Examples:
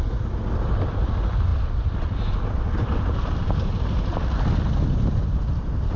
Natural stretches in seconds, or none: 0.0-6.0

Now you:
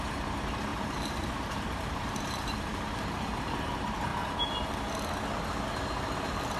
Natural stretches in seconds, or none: 4.1-6.6

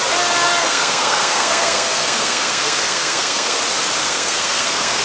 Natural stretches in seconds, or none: 0.0-0.6; 3.6-4.0

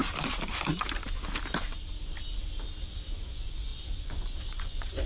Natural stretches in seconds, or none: 0.0-3.1

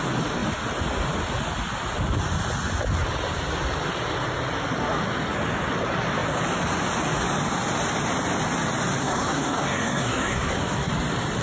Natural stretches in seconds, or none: 0.0-9.0; 10.9-11.4